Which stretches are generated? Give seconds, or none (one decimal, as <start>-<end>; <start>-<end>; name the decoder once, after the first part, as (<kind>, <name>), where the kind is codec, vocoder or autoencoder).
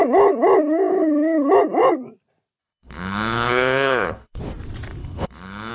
0.9-1.5 (codec, HILCodec); 2.6-4.4; 5.0-5.7